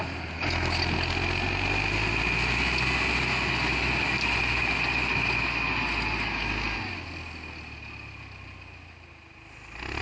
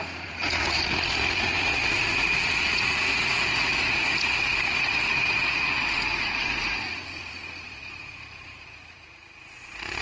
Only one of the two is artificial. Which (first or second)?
second